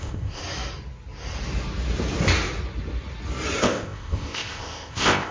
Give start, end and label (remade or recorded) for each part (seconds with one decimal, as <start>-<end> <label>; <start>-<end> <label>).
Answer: 0.0-0.4 remade; 0.4-3.6 recorded; 3.6-5.3 remade